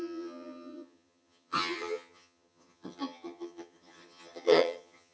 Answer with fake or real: fake